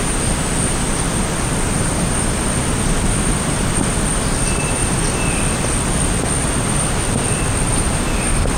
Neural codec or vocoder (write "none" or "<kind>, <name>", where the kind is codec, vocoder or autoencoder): none